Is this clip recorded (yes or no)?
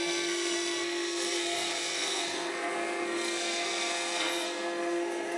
no